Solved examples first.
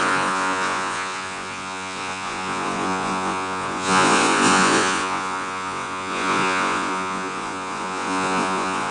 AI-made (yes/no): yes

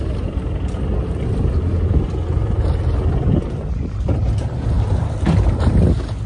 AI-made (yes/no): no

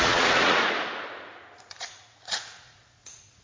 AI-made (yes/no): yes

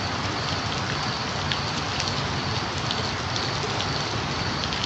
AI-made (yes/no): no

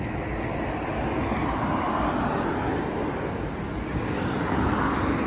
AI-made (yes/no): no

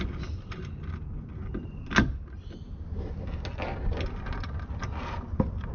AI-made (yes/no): no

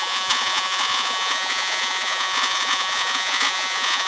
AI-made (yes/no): yes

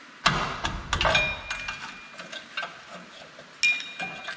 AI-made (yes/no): no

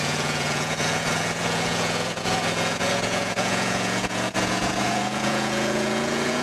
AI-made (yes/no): yes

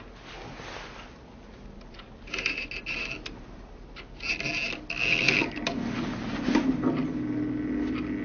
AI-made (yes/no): no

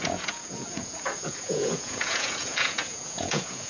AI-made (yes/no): yes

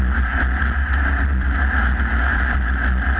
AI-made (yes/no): no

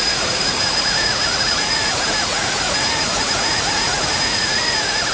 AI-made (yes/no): yes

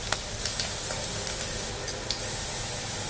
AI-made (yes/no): no